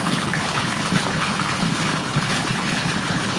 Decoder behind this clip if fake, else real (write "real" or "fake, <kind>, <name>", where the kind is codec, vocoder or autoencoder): fake, codec, HILCodec